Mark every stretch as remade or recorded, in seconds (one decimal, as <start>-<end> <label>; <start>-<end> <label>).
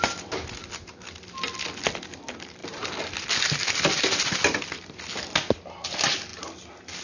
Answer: 0.0-2.6 recorded; 2.6-3.1 remade; 3.1-7.0 recorded